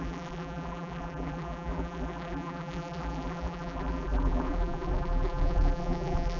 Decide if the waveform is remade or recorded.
remade